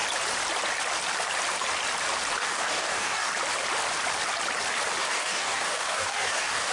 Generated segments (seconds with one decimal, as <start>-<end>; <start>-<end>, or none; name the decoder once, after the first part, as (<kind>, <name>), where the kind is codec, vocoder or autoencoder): 2.4-3.3 (codec, DAC); 5.0-6.7